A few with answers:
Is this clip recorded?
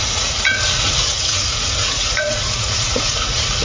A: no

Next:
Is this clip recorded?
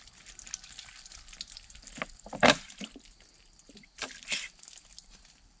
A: yes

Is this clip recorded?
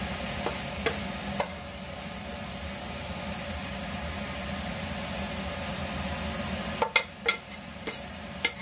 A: yes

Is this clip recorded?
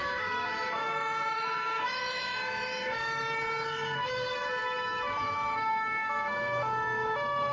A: no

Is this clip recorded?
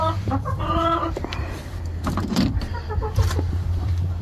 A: no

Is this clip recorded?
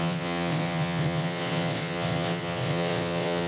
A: no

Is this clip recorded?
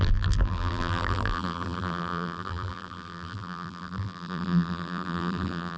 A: no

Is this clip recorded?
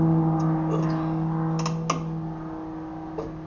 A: yes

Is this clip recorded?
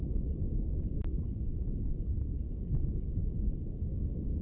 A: yes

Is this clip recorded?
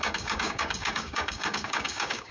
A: no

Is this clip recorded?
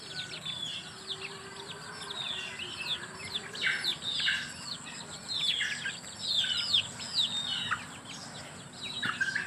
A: yes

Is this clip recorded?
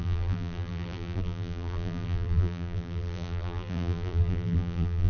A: no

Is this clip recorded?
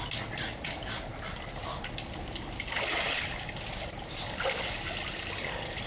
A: yes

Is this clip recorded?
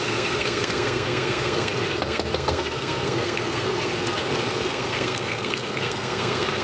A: no